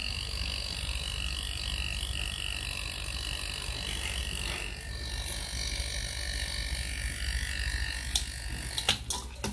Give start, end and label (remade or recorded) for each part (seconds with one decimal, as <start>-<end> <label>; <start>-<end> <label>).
0.0-9.5 recorded